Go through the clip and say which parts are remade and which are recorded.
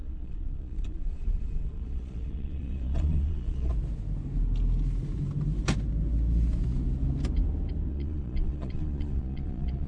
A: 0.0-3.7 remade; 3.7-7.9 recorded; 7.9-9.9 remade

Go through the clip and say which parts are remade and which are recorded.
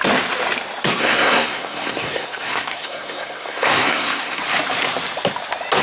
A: 0.0-0.9 recorded; 0.9-4.4 remade; 4.4-5.8 recorded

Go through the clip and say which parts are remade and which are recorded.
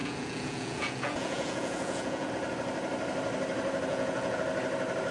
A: 0.0-2.3 remade; 2.3-3.9 recorded; 3.9-4.4 remade; 4.4-5.1 recorded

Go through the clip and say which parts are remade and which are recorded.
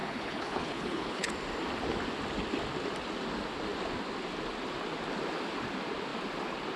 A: 0.0-1.3 remade; 1.3-6.8 recorded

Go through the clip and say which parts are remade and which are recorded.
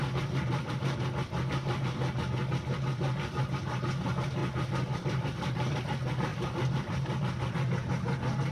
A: 0.0-0.8 remade; 0.8-4.4 recorded; 4.4-5.8 remade; 5.8-6.3 recorded; 6.3-7.4 remade; 7.4-8.5 recorded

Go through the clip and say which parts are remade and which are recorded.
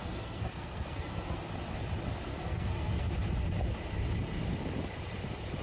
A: 0.0-1.4 remade; 1.4-2.3 recorded; 2.3-3.1 remade; 3.1-5.6 recorded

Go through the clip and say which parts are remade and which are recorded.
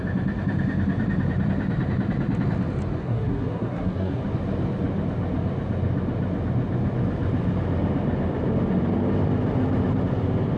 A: 0.0-3.0 recorded; 3.0-4.2 remade; 4.2-10.6 recorded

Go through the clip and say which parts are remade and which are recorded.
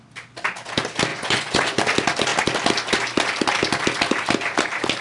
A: 0.0-1.1 recorded; 1.1-1.8 remade; 1.8-5.0 recorded